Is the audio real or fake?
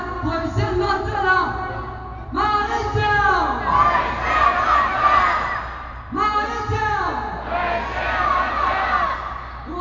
real